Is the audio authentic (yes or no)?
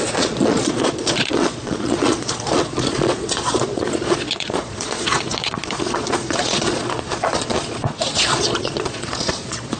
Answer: no